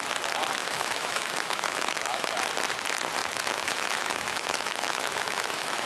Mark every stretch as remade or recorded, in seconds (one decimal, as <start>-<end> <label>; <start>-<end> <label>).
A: 0.0-0.6 recorded; 0.6-2.3 remade; 2.3-3.2 recorded; 3.2-5.9 remade